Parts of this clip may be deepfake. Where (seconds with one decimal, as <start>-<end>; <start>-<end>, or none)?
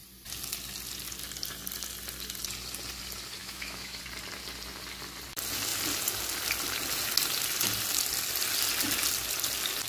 3.4-4.0